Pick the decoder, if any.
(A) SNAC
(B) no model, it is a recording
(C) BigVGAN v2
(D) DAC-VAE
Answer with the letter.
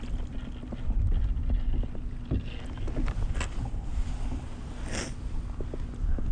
B